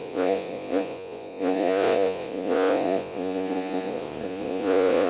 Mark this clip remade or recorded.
remade